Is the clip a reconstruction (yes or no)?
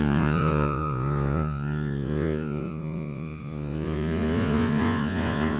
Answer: yes